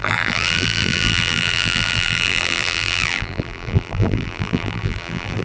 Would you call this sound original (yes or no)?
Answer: no